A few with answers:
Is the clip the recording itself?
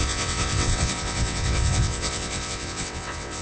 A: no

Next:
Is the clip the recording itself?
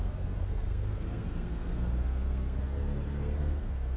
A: no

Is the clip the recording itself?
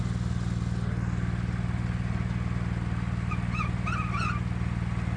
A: yes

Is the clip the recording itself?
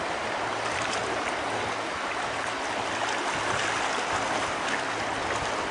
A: yes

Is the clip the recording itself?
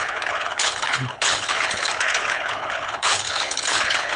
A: no